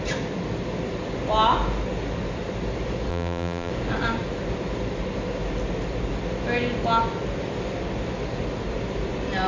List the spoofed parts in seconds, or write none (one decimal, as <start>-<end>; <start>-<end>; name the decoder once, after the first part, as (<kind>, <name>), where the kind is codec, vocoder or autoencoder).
3.1-3.7 (vocoder, BigVGAN v2)